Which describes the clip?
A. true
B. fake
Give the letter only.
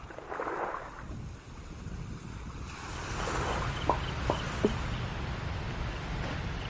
A